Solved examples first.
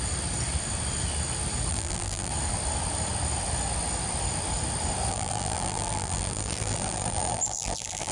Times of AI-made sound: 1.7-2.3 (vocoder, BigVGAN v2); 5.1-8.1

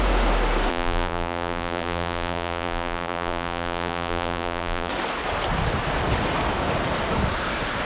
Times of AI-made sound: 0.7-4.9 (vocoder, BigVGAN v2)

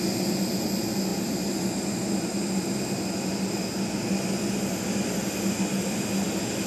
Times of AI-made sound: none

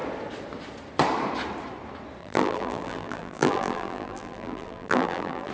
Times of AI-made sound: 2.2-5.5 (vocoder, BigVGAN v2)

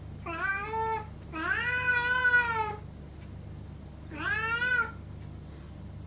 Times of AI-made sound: 0.5-1.3 (vocoder, BigVGAN v2)

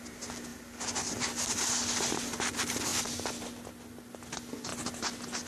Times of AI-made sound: 0.5-1.2 (vocoder, BigVGAN v2)

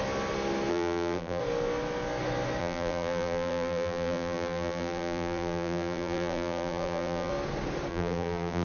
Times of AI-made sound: 0.7-1.4 (vocoder, BigVGAN v2); 2.6-7.3; 7.9-8.6